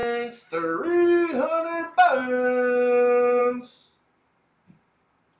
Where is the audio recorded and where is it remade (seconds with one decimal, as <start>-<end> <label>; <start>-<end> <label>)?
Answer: 0.0-5.4 recorded